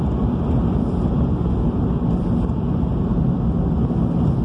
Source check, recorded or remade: recorded